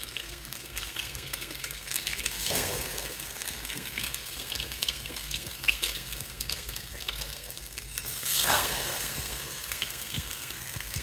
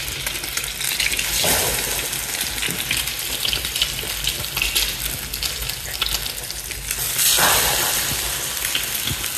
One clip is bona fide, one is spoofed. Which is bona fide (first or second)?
second